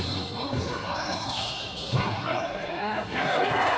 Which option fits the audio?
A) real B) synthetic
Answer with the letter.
B